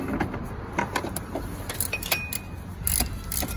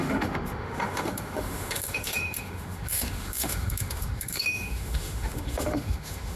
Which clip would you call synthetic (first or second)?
second